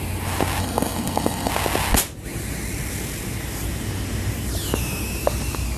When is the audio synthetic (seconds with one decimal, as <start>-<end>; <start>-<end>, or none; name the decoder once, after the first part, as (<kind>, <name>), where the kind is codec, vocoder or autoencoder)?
0.6-1.5 (codec, SNAC)